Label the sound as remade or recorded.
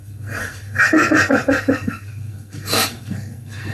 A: remade